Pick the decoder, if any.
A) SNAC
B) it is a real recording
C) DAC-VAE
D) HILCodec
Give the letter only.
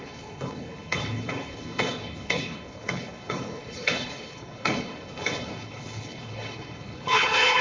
D